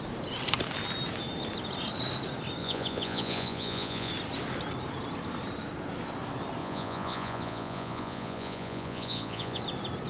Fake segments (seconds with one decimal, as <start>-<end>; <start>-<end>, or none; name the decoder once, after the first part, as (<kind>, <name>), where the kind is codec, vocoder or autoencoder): 2.6-4.1 (vocoder, Vocos); 6.6-9.6